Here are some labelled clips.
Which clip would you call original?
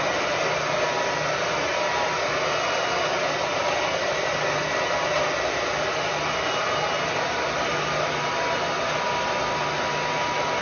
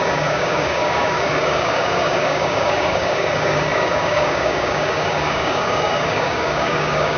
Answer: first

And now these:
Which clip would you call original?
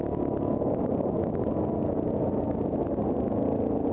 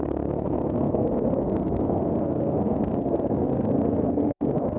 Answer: first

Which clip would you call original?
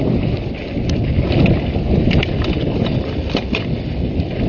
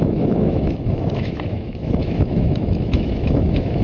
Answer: first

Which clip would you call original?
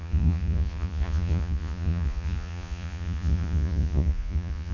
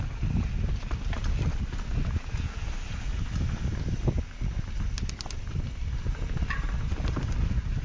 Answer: second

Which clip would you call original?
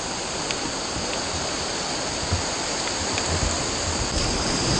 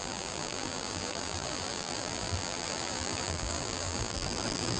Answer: first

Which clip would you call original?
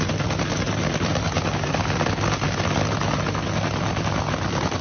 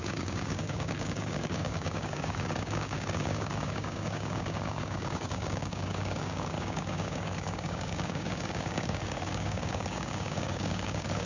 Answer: first